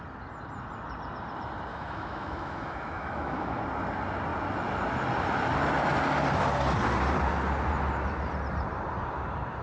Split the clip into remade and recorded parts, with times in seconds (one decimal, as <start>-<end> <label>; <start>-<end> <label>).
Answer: 0.0-1.7 recorded; 1.7-3.6 remade; 3.6-9.6 recorded